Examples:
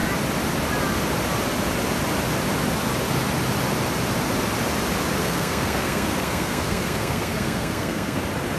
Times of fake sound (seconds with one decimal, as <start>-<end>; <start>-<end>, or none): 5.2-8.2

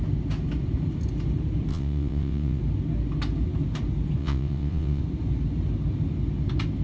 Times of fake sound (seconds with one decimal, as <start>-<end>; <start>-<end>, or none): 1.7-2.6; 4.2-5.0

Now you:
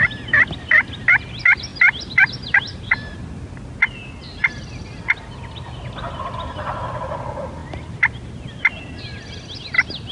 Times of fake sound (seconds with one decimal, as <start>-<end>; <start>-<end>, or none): none

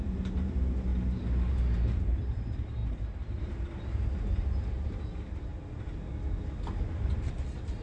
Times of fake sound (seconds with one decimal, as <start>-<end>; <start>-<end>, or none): 0.0-0.9; 1.5-2.8; 3.4-5.5; 7.3-7.8

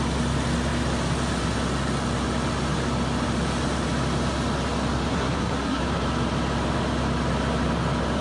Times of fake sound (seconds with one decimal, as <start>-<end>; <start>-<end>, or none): 5.1-5.8

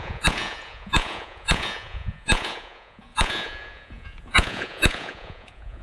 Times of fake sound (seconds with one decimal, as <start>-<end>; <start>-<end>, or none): 0.0-5.8